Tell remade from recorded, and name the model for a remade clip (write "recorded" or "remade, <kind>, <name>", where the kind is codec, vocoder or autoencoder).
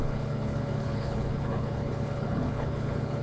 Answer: remade, codec, HILCodec